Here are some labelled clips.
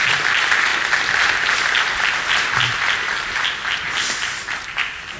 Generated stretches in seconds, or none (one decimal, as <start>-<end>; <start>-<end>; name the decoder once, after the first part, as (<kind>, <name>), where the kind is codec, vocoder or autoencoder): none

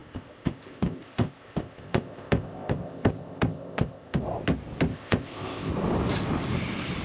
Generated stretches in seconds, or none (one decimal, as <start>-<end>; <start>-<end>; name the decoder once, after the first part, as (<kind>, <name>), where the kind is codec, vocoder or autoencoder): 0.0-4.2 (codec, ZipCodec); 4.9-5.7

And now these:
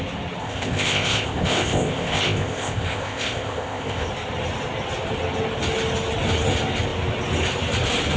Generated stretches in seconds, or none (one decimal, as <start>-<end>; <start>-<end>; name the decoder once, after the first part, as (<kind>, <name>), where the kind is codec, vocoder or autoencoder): 0.4-4.1 (codec, ZipCodec)

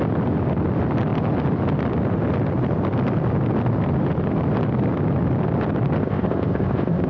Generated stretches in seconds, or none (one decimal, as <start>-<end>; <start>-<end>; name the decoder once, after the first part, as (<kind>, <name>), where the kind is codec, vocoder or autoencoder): 6.0-7.1 (codec, ZipCodec)

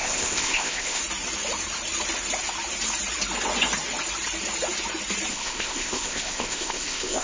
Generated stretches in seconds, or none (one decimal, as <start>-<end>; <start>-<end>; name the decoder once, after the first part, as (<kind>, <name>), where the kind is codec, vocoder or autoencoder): 0.0-1.0 (codec, ZipCodec); 5.3-7.2

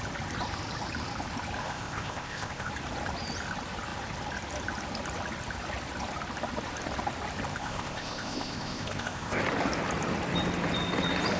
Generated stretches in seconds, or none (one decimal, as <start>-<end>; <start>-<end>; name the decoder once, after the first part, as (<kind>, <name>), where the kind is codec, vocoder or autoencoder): 1.6-2.7 (codec, ZipCodec); 7.5-9.4

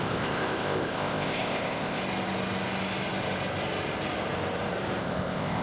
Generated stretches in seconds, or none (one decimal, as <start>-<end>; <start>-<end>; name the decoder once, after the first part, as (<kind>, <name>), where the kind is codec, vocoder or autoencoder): 0.0-2.0 (codec, ZipCodec); 5.0-5.6